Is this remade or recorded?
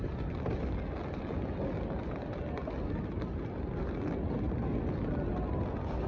recorded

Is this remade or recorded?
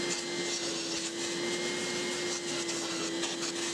recorded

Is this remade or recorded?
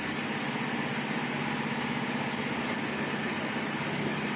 recorded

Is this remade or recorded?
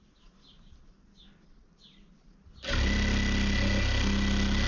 recorded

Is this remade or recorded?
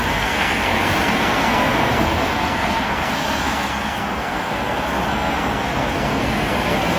remade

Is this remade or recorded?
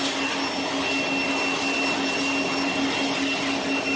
recorded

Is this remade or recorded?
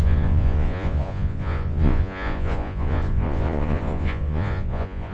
remade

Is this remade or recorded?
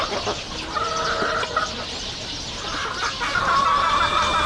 recorded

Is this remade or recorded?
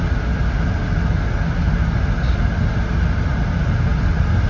recorded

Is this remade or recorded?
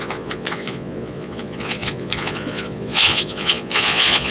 remade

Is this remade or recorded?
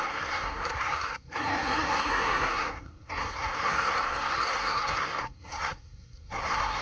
remade